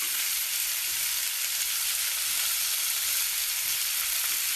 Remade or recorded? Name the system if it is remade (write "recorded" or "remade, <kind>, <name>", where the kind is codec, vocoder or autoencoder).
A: recorded